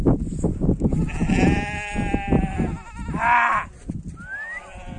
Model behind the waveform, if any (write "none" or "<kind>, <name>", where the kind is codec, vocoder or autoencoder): none